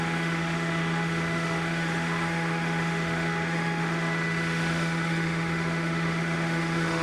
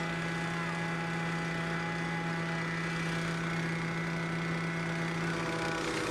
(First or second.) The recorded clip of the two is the second